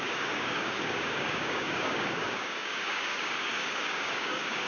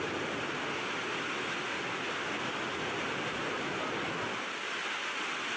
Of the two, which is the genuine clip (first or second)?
second